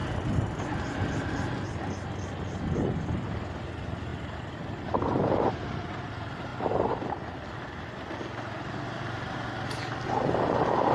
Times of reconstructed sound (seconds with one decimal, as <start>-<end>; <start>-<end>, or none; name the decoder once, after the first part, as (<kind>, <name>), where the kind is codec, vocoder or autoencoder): none